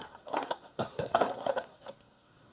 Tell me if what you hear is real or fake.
fake